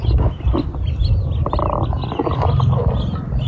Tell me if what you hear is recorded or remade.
recorded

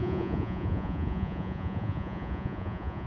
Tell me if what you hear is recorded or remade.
remade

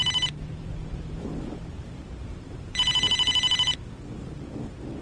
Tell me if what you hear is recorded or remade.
remade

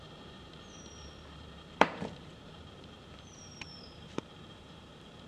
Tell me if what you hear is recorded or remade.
remade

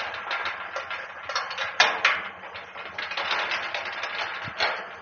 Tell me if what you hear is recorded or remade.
recorded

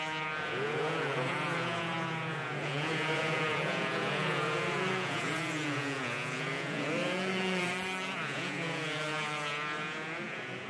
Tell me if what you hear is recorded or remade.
remade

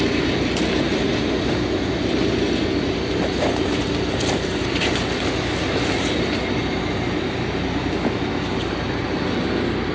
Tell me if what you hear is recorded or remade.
recorded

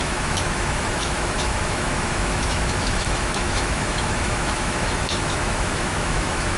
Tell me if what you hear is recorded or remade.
remade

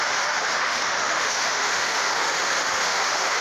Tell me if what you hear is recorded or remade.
remade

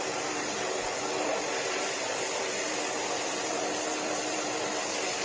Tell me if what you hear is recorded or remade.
recorded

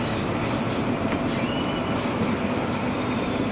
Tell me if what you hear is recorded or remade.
recorded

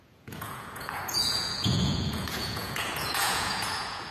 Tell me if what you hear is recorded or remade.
remade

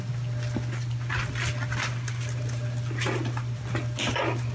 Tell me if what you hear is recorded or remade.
recorded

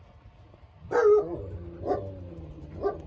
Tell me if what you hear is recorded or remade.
recorded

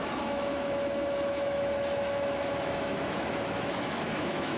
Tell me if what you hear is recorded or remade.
remade